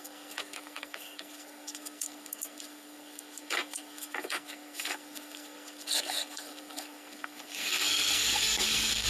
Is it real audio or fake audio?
fake